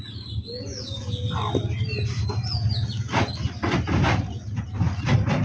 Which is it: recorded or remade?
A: recorded